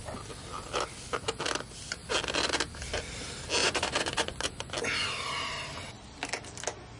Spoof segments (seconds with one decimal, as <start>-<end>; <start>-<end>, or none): 3.6-4.7